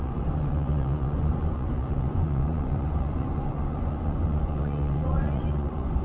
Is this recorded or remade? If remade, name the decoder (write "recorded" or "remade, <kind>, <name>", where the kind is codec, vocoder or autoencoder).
remade, vocoder, Vocos